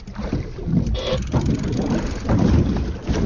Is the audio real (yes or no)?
yes